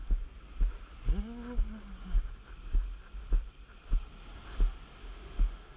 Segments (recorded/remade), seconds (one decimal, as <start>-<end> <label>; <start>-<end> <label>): 0.0-5.0 recorded; 5.0-5.8 remade